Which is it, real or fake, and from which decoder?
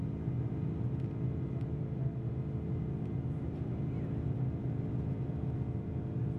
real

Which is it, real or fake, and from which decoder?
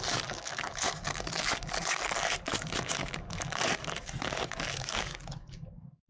fake, codec, DAC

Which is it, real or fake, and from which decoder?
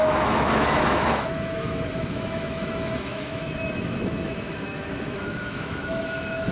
fake, autoencoder, DAC-VAE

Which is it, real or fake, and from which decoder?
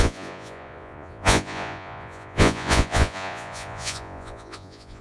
fake, vocoder, Vocos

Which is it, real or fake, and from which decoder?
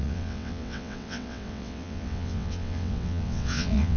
fake, vocoder, WaveNeXt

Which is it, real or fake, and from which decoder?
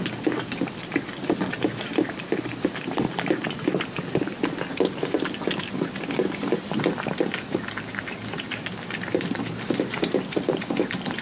real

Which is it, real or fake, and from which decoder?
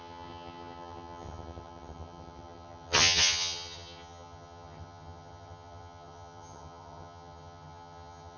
fake, vocoder, HiFi-GAN